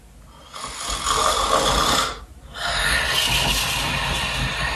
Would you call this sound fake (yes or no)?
no